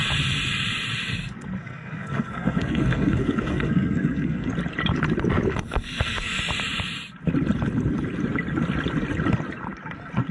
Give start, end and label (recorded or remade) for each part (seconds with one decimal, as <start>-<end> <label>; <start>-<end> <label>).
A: 0.0-1.6 recorded; 1.6-4.5 remade; 4.5-5.5 recorded; 5.5-6.4 remade; 6.4-10.3 recorded